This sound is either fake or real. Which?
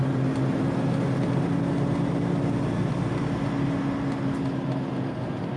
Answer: real